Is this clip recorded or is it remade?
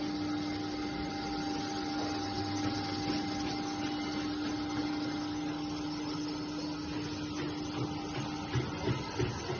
recorded